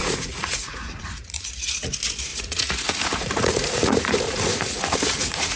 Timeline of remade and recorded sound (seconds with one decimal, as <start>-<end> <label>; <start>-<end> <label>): 0.0-1.9 remade; 1.9-2.3 recorded; 2.3-5.6 remade